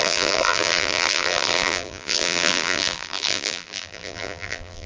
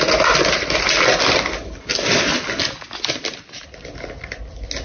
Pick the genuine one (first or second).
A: second